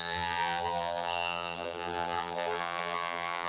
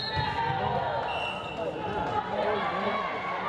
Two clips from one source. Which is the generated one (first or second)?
first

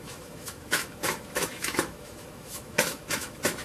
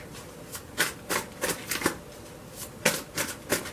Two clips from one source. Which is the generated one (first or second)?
first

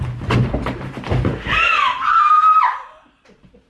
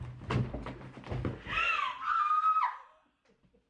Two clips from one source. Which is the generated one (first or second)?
first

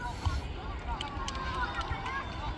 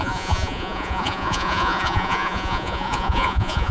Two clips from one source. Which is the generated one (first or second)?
second